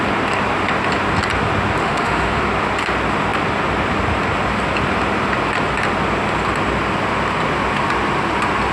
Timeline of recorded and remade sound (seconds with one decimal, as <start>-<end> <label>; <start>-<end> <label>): 0.0-1.8 recorded; 1.8-2.4 remade; 2.4-8.7 recorded